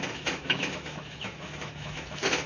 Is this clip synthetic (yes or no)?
yes